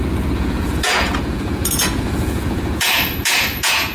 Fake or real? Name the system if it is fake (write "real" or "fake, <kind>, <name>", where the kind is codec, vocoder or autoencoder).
fake, vocoder, Vocos